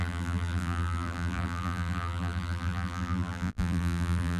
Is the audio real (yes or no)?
no